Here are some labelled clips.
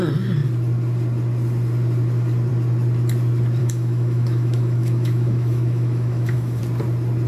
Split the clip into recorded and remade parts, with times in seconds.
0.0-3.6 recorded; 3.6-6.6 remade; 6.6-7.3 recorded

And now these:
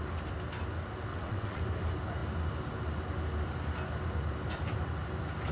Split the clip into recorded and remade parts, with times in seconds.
0.0-1.1 recorded; 1.1-1.6 remade; 1.6-5.5 recorded

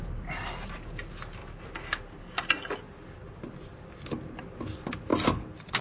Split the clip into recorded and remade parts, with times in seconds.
0.0-5.8 recorded